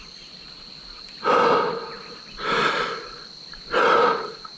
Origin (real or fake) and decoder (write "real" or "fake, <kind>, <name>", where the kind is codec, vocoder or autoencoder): real